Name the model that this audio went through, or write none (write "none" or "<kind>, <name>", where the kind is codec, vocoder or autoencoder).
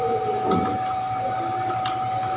none